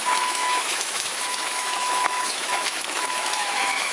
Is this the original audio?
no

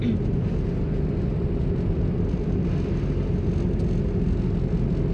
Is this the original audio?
yes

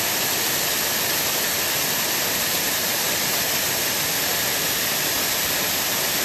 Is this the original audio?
yes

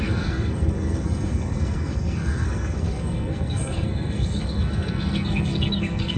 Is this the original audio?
no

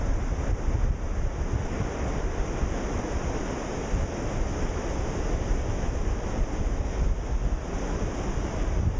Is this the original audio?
yes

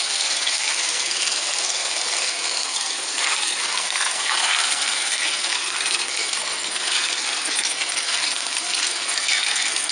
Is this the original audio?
no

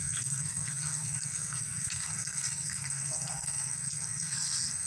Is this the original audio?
no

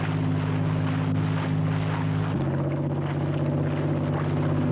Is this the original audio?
yes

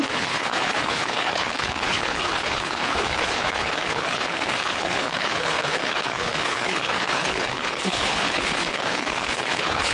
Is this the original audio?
no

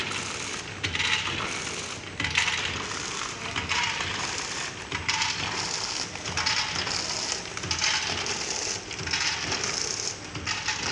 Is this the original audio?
yes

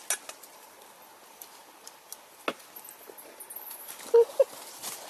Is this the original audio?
yes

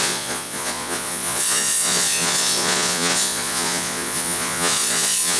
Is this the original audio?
no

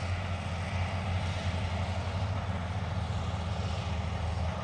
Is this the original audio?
yes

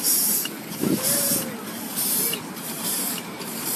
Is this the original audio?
no